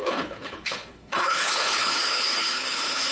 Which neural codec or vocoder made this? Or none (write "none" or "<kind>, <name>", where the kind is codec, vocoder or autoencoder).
codec, HILCodec